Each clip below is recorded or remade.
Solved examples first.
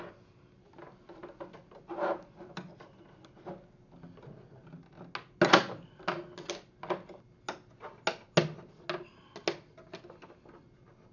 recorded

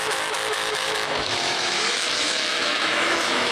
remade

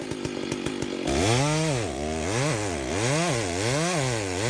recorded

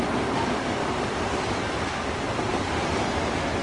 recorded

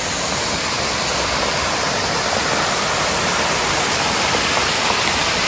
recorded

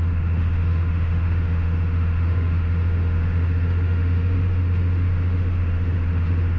remade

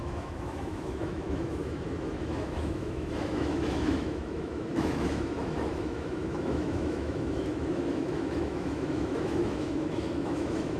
remade